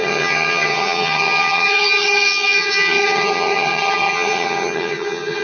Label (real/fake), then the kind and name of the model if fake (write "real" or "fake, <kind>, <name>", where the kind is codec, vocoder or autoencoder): fake, vocoder, HiFi-GAN